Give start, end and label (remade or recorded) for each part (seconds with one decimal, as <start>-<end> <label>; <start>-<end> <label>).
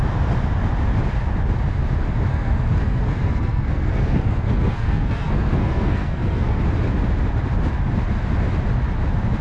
0.0-2.3 recorded; 2.3-6.6 remade; 6.6-9.4 recorded